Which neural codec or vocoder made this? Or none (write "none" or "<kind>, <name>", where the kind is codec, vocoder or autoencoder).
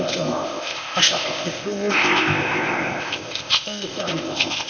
codec, ZipCodec